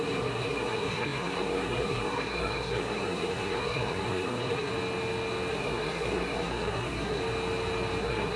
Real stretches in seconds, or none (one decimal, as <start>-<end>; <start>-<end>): 4.7-5.5; 7.2-8.0